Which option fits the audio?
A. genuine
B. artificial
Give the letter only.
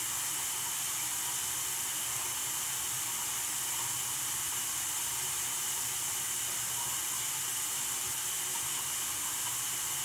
A